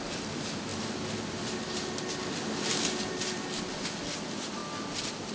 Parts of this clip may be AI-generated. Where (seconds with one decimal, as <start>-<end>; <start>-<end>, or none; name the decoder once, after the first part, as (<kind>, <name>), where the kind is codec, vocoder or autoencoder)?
0.7-2.0 (vocoder, BigVGAN v2)